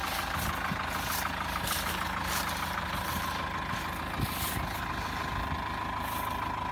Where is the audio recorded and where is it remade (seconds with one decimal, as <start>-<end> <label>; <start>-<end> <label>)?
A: 0.0-6.7 recorded